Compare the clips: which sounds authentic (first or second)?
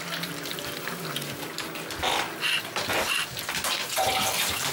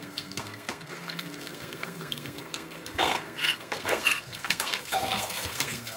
first